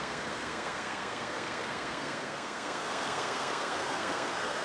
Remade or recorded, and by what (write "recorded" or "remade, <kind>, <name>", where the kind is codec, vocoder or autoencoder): remade, codec, SNAC